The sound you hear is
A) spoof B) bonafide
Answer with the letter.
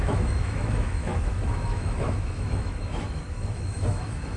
A